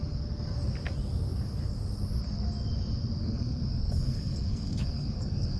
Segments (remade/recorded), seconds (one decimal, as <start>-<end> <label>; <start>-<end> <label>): 0.0-3.2 recorded; 3.2-5.6 remade